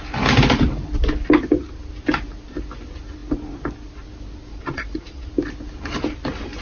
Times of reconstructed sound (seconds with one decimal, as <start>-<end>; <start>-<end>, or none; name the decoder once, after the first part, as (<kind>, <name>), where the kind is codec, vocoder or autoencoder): 4.5-5.3 (vocoder, Vocos)